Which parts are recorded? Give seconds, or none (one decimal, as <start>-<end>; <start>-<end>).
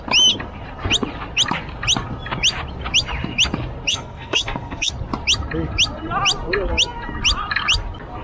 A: 0.0-3.9; 4.9-8.2